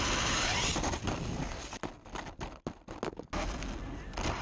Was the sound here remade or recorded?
recorded